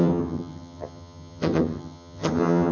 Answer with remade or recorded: remade